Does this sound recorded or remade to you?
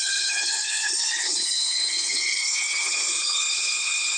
remade